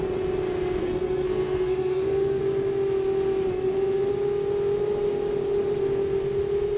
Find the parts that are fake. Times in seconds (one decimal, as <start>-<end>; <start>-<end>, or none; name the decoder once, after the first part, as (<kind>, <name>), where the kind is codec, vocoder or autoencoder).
0.8-2.4 (codec, SNAC)